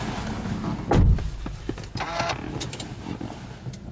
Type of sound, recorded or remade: recorded